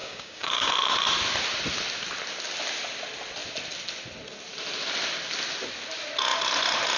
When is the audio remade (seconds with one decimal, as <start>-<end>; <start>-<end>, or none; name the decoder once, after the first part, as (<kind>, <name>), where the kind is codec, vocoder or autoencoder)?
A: 0.0-0.7 (codec, DAC)